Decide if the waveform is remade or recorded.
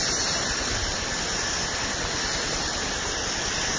recorded